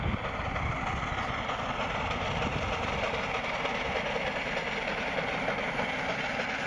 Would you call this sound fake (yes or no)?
no